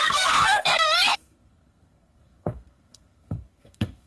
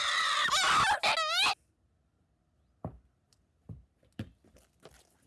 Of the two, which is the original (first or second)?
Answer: second